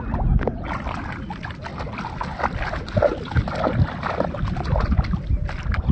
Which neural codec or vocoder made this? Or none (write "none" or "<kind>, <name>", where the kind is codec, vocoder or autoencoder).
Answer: none